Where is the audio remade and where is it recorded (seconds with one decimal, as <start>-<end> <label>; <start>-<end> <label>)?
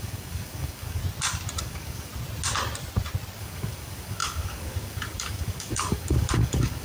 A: 0.0-1.0 remade; 1.0-1.6 recorded; 1.6-2.1 remade; 2.1-3.4 recorded; 3.4-6.8 remade